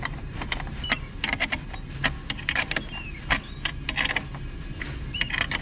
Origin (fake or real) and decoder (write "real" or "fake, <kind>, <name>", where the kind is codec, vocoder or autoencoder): real